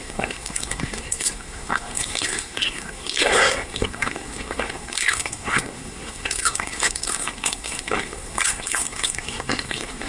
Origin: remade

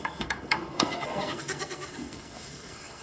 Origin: remade